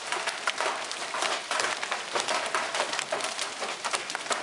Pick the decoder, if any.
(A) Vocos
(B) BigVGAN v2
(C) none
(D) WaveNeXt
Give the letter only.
C